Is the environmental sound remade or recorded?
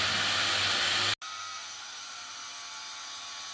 recorded